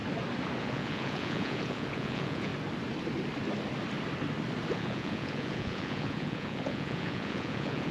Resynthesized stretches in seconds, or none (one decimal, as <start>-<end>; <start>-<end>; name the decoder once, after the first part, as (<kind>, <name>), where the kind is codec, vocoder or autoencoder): 0.6-2.5 (vocoder, Vocos); 4.7-7.9